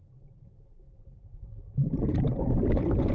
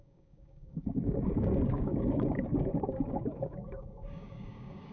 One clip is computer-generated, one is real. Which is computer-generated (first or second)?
second